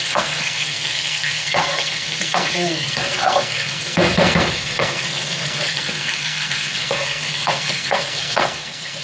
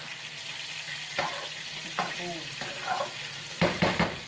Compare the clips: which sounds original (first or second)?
second